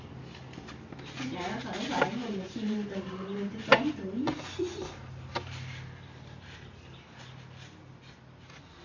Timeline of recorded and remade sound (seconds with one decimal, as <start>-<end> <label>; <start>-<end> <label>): 0.0-2.2 recorded; 2.2-4.4 remade; 4.4-8.8 recorded